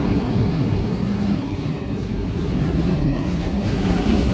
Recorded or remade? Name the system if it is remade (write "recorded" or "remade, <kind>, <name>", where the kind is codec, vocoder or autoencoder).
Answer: remade, codec, SNAC